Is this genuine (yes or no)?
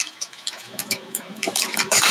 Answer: no